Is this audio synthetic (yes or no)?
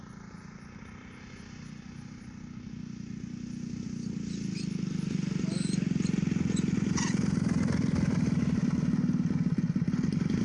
no